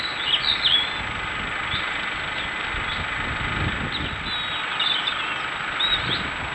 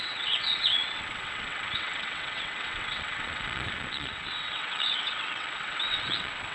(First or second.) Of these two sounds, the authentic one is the first